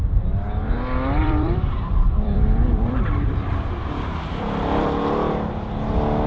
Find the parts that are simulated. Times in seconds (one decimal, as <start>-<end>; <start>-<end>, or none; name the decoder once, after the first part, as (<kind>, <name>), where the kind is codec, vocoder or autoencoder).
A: 1.2-5.0 (vocoder, BigVGAN v2)